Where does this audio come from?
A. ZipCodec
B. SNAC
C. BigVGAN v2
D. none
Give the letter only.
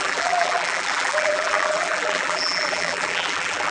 C